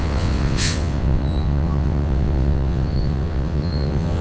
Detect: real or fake fake